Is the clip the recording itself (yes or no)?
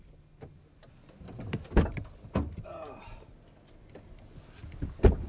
yes